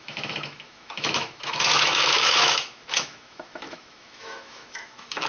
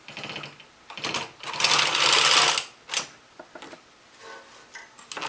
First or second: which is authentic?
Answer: second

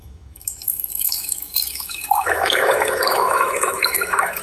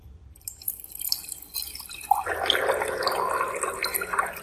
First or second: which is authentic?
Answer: second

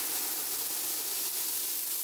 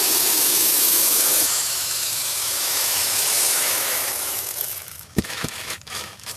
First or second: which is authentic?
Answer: first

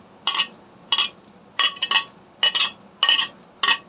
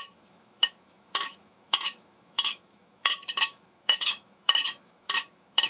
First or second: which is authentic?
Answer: first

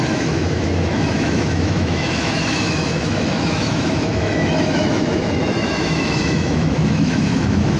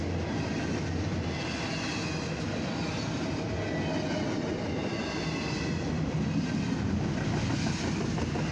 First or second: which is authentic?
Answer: second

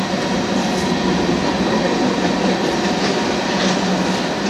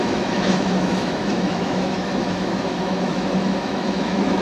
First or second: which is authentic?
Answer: first